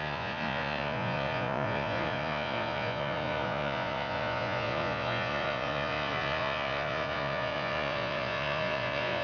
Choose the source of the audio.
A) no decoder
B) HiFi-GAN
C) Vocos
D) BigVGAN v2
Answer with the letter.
C